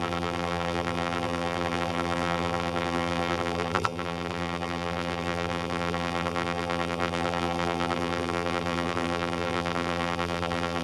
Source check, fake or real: fake